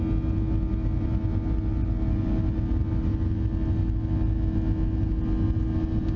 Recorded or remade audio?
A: recorded